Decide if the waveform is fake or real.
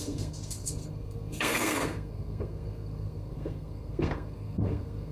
fake